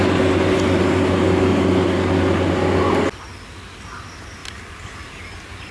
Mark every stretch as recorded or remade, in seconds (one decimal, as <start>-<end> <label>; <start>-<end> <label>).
0.0-5.7 recorded